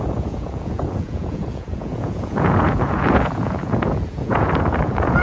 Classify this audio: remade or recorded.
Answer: remade